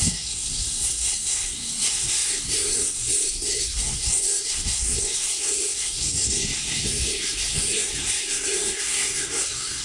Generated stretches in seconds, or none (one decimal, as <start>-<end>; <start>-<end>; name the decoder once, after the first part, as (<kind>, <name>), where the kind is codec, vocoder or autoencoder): 0.0-9.8 (codec, SNAC)